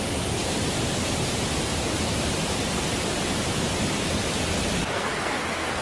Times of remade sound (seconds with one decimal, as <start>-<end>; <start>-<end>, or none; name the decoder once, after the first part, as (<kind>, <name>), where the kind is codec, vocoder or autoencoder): 4.8-5.8 (codec, SNAC)